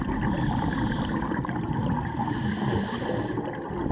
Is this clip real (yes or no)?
no